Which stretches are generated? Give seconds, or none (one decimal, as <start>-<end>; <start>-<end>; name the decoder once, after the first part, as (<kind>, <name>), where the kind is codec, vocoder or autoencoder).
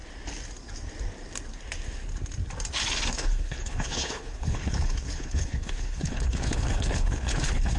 3.1-7.8 (codec, HILCodec)